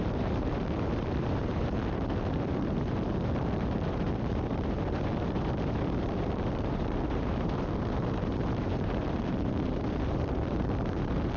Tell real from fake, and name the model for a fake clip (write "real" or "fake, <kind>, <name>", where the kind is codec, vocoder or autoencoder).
fake, vocoder, BigVGAN v2